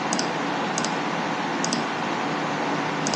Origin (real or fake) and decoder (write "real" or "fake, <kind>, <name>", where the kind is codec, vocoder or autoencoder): real